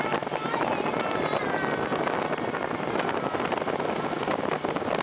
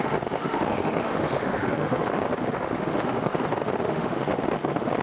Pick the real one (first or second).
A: first